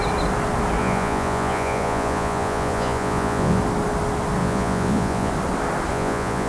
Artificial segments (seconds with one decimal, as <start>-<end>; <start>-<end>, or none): 0.8-3.6; 4.4-5.3; 5.9-6.5